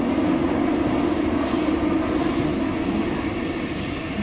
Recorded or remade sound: recorded